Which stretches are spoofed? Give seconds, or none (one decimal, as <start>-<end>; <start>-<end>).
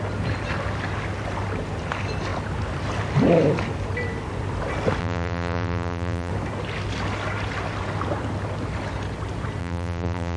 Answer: 5.0-6.3; 9.6-10.4